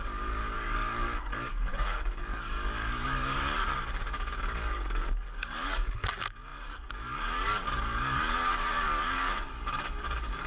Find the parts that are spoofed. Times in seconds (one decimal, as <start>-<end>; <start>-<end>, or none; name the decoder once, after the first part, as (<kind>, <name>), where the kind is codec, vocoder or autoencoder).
0.0-10.5 (codec, DAC)